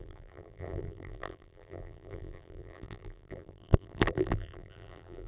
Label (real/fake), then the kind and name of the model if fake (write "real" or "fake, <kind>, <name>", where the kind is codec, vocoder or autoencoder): fake, vocoder, BigVGAN v2